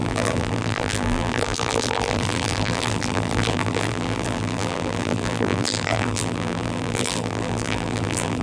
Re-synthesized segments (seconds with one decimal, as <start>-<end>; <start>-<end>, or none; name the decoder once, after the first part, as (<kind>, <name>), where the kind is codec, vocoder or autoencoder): 0.0-8.4 (vocoder, BigVGAN v2)